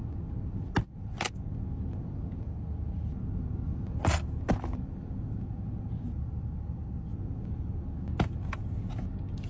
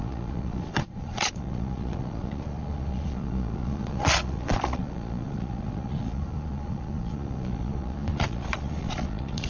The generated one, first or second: second